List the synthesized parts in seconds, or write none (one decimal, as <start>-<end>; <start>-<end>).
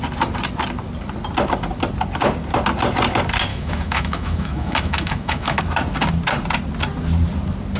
3.5-5.6